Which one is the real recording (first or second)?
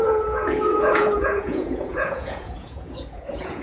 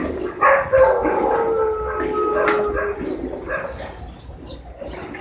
second